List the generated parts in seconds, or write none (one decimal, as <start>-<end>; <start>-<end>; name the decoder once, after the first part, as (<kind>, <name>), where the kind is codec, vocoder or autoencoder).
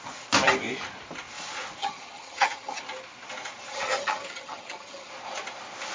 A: 1.8-2.8 (vocoder, HiFi-GAN); 3.7-5.1